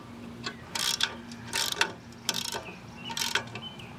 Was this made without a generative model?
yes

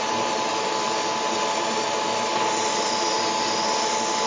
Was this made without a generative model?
yes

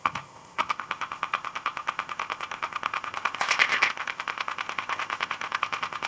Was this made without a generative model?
no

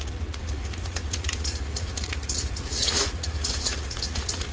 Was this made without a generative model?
no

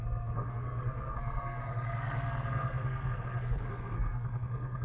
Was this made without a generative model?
no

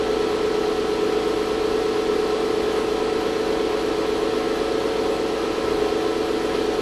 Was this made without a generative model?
yes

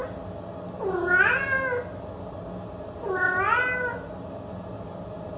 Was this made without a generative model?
yes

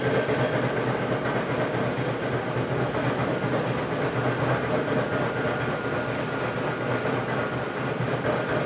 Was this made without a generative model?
yes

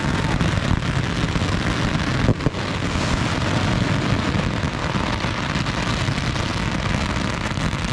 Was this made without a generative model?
yes